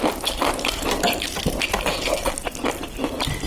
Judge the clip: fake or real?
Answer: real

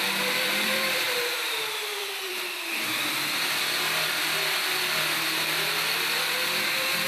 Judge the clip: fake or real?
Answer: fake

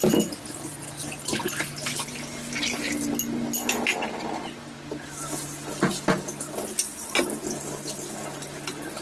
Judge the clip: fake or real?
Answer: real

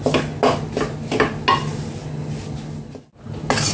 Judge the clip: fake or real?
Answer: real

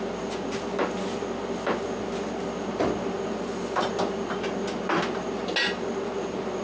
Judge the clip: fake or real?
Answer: real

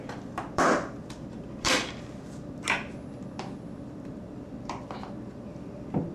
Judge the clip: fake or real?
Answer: fake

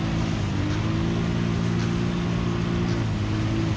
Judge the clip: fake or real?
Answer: real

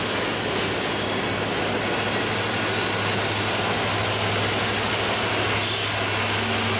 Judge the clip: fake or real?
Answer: real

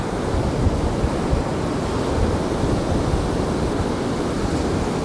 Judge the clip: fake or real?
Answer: real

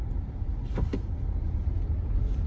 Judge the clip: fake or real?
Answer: fake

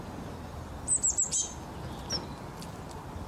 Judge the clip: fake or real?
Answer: fake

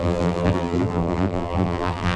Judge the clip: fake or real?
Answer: fake